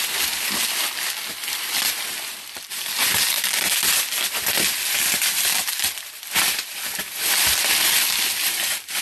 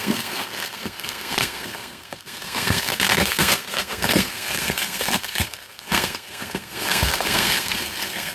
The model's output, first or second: second